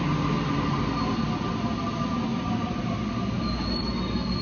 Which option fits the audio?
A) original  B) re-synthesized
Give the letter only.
A